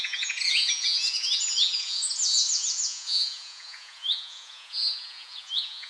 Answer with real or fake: fake